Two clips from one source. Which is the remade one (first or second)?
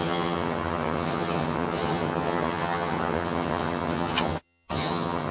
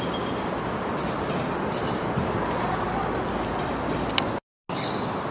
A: first